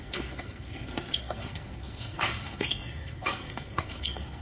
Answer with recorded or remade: remade